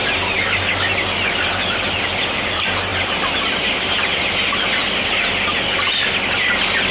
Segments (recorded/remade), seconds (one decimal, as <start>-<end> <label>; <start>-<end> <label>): 0.0-6.9 recorded